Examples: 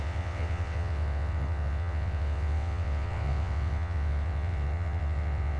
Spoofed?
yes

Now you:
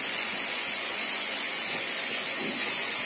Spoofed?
yes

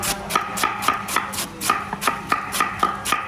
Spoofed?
no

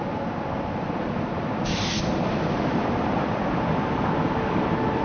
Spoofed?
yes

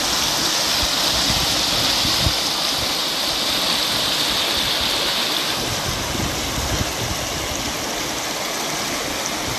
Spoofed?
no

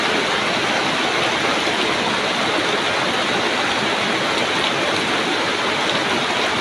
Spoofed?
no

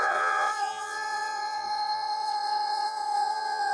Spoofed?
yes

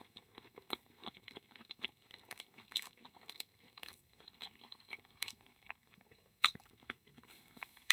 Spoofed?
yes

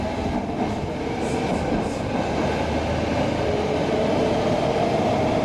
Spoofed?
no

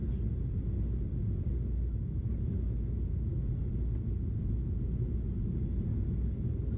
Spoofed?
no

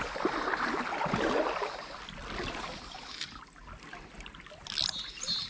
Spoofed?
no